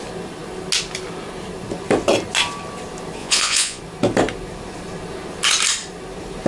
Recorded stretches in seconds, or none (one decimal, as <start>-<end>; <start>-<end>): 0.0-3.2; 3.8-6.5